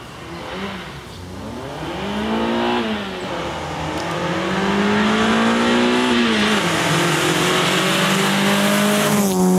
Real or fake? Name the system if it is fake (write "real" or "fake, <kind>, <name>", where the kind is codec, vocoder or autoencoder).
real